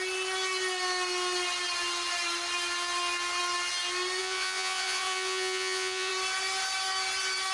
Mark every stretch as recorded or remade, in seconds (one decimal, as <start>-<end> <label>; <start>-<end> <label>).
0.0-4.2 recorded; 4.2-6.1 remade; 6.1-7.5 recorded